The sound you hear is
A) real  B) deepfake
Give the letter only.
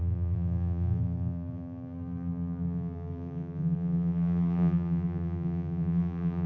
B